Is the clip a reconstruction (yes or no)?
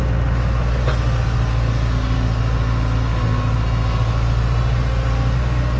no